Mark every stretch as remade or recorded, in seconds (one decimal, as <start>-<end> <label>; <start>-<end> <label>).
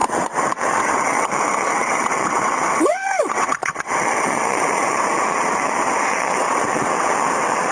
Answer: 0.0-7.7 remade